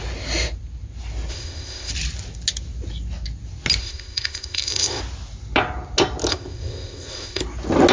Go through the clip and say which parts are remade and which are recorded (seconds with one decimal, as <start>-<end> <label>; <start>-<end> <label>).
0.0-1.3 recorded; 1.3-1.9 remade; 1.9-3.8 recorded; 3.8-5.0 remade; 5.0-6.3 recorded; 6.3-7.4 remade; 7.4-7.9 recorded